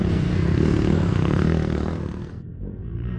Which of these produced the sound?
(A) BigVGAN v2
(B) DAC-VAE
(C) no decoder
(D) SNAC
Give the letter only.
D